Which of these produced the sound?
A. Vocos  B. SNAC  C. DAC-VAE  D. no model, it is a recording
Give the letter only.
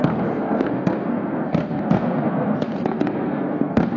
B